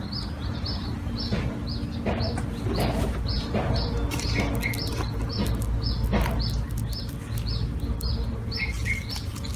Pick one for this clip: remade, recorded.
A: recorded